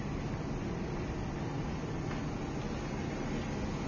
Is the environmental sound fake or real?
real